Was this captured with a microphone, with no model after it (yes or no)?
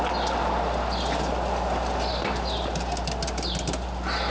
yes